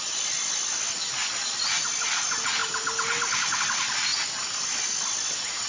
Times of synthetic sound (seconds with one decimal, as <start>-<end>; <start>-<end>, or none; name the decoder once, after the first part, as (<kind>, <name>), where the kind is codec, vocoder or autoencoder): none